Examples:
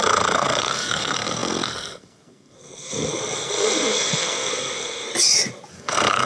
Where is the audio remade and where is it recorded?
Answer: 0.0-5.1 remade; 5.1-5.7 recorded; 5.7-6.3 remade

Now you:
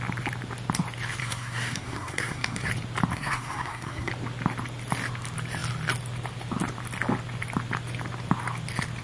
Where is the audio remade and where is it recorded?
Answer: 0.0-1.2 recorded; 1.2-2.7 remade; 2.7-3.1 recorded; 3.1-4.1 remade; 4.1-9.0 recorded

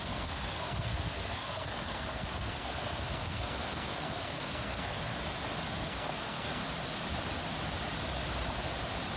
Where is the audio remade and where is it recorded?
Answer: 0.0-5.1 remade; 5.1-5.8 recorded; 5.8-6.6 remade; 6.6-9.2 recorded

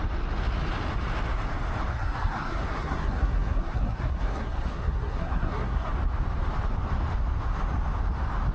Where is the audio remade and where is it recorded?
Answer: 0.0-1.9 recorded; 1.9-5.9 remade; 5.9-8.5 recorded

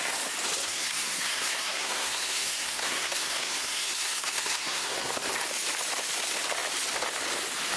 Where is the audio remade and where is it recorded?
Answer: 0.0-0.6 recorded; 0.6-5.1 remade; 5.1-7.8 recorded

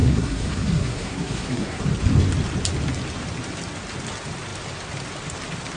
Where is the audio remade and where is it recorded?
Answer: 0.0-1.8 remade; 1.8-5.8 recorded